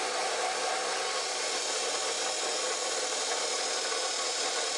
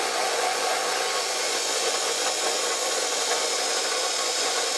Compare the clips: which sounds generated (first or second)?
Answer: second